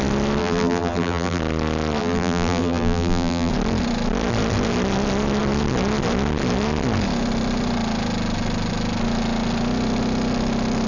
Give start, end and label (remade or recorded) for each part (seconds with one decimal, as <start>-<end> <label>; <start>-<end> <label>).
0.0-0.4 recorded; 0.4-1.4 remade; 1.4-2.0 recorded; 2.0-3.5 remade; 3.5-10.9 recorded